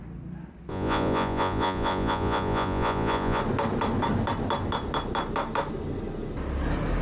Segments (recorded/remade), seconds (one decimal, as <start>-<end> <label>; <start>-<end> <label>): 0.0-0.7 recorded; 0.7-3.4 remade; 3.4-7.0 recorded